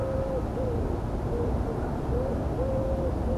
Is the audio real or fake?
real